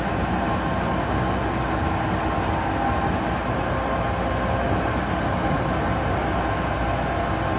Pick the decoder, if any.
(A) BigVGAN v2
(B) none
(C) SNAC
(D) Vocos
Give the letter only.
B